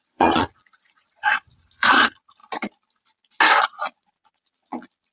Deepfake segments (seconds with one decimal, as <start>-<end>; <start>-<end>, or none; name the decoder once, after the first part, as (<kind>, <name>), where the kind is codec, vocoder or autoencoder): 0.0-2.4 (vocoder, Vocos); 3.6-5.1

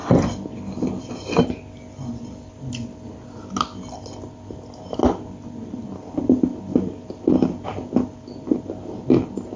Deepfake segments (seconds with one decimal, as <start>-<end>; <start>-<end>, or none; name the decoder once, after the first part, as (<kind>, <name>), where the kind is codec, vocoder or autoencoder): none

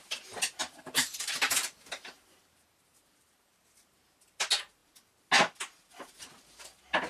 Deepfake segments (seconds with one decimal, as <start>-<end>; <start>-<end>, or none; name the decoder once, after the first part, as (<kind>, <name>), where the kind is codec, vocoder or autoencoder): 0.6-4.3 (vocoder, BigVGAN v2)

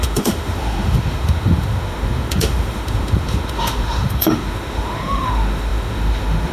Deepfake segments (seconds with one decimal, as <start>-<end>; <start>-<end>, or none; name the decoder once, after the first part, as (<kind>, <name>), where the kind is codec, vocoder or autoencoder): 0.0-6.5 (autoencoder, DAC-VAE)

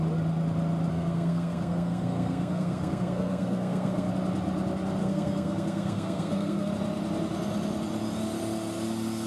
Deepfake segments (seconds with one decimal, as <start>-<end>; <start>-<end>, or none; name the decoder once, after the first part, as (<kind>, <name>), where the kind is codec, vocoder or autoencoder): 0.9-4.1 (codec, SNAC); 5.0-6.7